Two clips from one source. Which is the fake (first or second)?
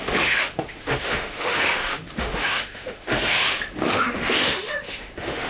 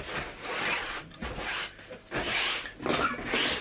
first